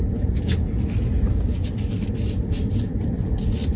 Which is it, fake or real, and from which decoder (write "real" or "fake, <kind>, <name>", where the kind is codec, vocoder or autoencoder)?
real